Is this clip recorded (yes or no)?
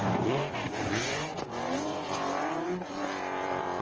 no